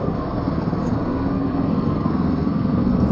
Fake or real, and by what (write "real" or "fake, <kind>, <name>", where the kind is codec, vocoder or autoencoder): fake, codec, SNAC